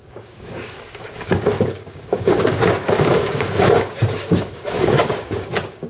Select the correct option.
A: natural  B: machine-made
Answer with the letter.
B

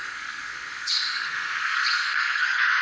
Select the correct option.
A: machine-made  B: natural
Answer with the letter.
A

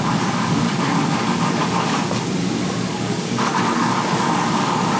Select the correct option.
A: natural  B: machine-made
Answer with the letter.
B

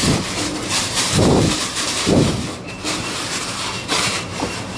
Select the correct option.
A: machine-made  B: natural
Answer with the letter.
A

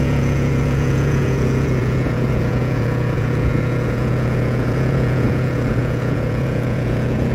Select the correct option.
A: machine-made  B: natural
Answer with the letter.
A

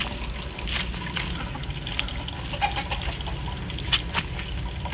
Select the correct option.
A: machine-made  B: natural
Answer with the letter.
B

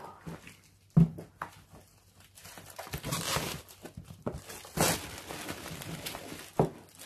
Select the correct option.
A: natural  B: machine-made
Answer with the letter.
A